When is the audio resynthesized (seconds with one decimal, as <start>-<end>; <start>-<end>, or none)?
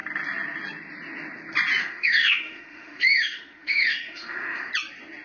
1.8-4.7